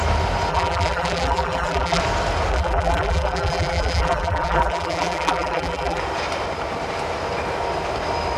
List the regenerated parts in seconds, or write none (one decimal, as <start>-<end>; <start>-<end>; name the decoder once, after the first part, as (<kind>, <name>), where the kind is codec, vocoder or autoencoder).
0.5-2.0 (vocoder, BigVGAN v2); 2.5-6.0